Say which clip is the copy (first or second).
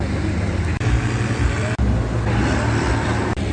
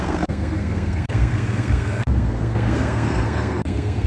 second